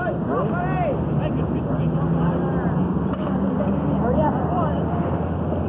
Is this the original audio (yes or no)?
yes